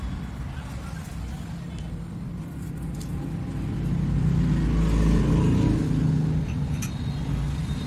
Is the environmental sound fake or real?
real